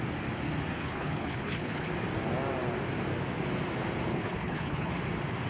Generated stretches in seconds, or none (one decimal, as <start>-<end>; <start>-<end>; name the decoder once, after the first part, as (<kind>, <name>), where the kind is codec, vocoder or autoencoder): 0.8-1.9 (codec, HILCodec); 4.1-4.9